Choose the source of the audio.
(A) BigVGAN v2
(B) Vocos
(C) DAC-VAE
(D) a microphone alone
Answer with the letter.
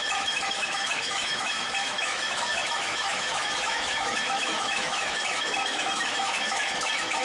C